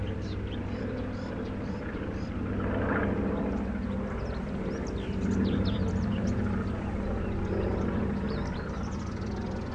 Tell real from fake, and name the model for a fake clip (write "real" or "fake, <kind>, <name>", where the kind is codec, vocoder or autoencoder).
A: fake, vocoder, BigVGAN v2